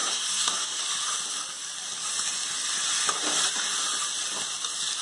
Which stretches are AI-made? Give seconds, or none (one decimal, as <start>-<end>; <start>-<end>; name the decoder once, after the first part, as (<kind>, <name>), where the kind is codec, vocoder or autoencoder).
0.0-0.8 (codec, SNAC)